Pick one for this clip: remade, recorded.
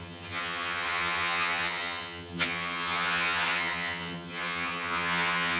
remade